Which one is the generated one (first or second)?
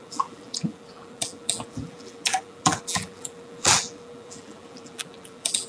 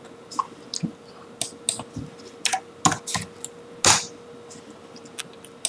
first